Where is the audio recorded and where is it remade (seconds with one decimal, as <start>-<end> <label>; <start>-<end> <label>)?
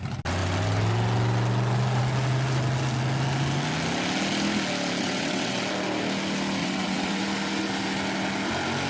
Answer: 0.0-5.0 recorded; 5.0-5.6 remade; 5.6-6.6 recorded; 6.6-7.2 remade; 7.2-8.9 recorded